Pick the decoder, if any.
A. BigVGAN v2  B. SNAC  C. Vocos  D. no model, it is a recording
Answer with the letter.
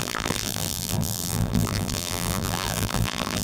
A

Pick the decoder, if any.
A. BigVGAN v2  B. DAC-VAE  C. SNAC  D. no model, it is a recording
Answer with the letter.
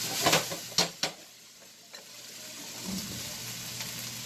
D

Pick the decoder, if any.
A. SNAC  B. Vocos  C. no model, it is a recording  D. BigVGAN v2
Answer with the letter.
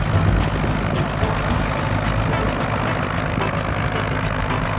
C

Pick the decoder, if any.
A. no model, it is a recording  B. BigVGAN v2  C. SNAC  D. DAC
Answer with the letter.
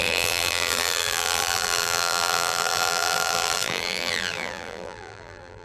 B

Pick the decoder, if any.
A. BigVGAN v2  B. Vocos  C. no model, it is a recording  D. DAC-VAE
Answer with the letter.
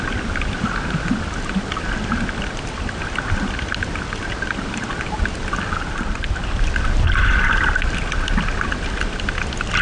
C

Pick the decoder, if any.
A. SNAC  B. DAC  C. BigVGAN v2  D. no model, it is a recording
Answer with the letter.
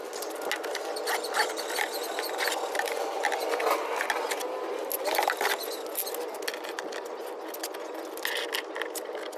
D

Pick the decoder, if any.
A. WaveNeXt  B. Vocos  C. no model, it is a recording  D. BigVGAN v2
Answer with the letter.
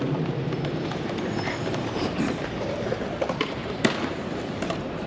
D